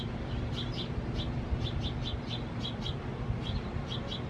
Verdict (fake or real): real